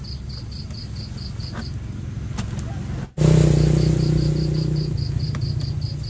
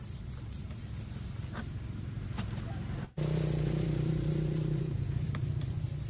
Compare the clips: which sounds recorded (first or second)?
first